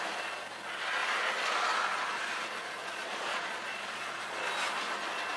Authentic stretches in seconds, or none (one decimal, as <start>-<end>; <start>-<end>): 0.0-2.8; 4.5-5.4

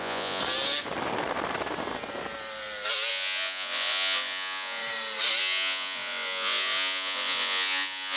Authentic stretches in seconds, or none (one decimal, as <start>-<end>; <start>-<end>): 0.4-3.1; 4.8-5.4

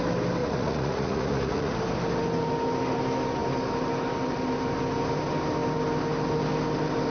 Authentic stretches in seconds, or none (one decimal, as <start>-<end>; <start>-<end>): 0.0-0.4; 1.7-7.1

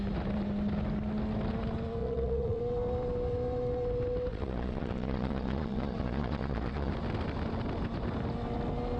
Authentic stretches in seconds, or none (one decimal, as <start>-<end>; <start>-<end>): 0.0-2.0; 2.6-4.3; 6.9-9.0

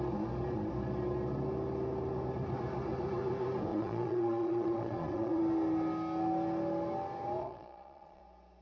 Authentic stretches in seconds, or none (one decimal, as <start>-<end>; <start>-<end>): 0.0-3.7; 5.4-7.4; 8.2-8.6

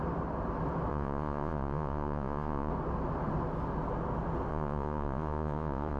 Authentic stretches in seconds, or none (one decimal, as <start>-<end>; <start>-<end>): 0.0-0.9; 2.7-4.5

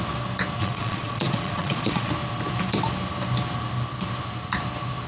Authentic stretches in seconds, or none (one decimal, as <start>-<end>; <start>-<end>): 0.0-0.6; 2.1-5.1

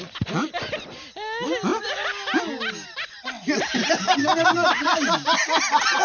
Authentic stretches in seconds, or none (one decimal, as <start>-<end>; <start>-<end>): 0.0-6.0